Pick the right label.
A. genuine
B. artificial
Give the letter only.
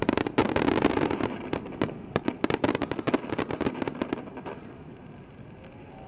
A